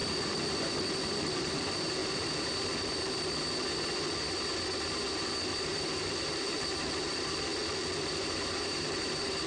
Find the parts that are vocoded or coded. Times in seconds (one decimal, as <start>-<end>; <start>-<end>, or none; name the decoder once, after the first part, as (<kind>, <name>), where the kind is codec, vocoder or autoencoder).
1.2-2.0 (vocoder, BigVGAN v2); 5.5-7.5; 8.0-9.5